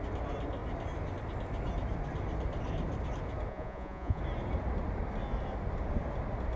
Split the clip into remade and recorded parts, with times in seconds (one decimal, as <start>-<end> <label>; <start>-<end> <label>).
0.0-3.5 recorded; 3.5-4.2 remade; 4.2-6.6 recorded